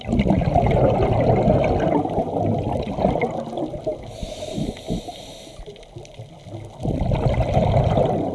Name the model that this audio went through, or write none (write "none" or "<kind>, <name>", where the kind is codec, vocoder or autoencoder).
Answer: none